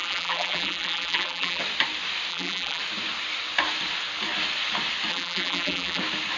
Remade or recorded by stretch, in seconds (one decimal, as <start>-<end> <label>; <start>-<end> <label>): 0.0-1.6 remade; 1.6-2.3 recorded; 2.3-2.8 remade; 2.8-5.1 recorded; 5.1-6.0 remade; 6.0-6.4 recorded